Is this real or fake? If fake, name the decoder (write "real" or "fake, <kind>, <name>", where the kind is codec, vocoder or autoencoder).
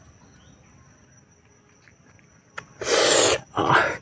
real